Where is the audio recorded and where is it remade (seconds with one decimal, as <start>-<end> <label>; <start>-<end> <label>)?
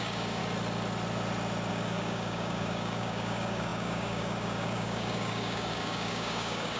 0.0-0.4 remade; 0.4-1.7 recorded; 1.7-6.8 remade